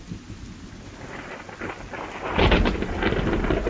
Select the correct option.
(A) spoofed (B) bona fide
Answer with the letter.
B